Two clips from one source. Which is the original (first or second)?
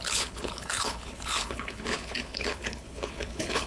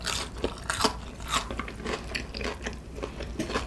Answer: second